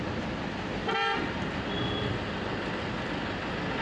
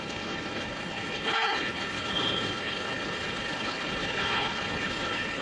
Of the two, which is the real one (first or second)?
first